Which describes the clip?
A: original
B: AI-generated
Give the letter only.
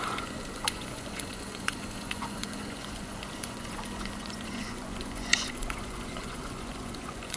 B